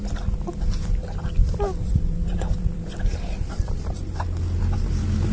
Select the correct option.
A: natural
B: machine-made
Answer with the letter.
A